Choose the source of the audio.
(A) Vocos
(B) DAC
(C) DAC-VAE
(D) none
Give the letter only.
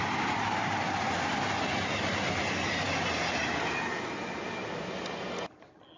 D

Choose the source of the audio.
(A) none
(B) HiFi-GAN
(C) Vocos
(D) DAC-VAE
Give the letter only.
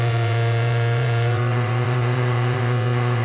C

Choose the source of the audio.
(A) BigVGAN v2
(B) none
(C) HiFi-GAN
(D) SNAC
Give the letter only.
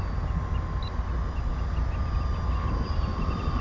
B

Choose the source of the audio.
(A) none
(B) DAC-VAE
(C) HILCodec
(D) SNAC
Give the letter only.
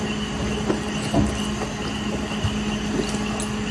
A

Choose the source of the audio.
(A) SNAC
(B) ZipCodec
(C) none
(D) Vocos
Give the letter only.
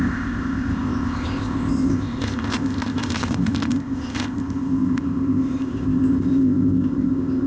B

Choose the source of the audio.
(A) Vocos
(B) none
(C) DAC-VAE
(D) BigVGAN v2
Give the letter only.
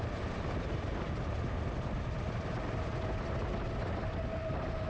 B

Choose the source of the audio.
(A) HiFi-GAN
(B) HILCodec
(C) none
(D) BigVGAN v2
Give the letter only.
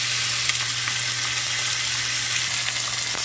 C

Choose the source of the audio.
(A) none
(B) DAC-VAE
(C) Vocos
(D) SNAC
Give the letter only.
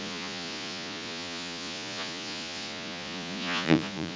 C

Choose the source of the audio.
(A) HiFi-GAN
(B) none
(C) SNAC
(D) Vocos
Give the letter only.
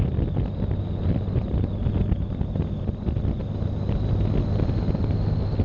B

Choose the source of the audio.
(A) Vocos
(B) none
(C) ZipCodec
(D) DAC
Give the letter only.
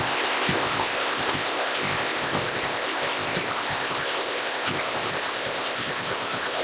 C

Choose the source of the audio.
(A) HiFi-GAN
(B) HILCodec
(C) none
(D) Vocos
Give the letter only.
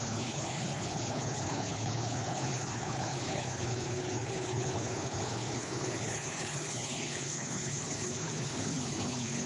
B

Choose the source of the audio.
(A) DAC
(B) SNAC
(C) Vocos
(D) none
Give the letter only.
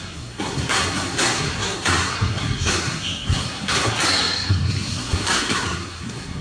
B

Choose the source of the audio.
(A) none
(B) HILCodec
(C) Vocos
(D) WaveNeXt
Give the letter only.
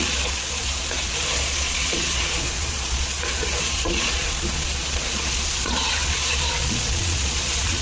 C